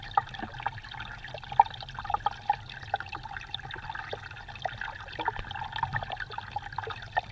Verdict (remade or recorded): recorded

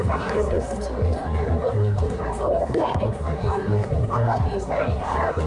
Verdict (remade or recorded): remade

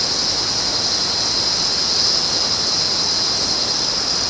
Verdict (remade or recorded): recorded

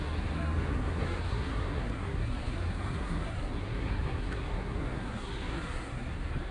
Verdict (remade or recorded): remade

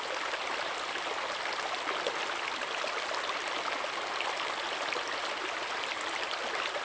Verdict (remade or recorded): recorded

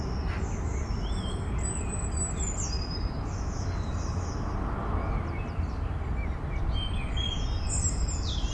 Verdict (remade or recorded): recorded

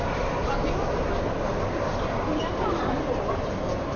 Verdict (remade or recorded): recorded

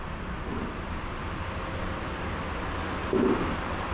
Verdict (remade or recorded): recorded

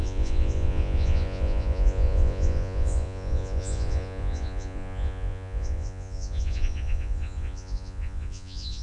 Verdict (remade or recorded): remade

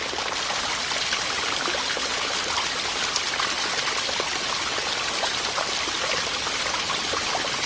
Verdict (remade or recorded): recorded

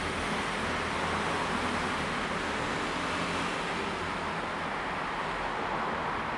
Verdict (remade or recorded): recorded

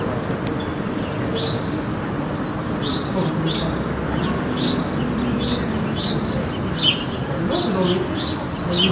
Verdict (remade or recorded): recorded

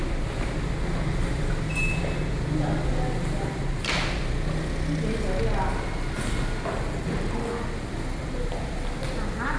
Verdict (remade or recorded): recorded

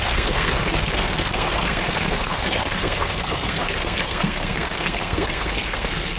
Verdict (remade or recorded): remade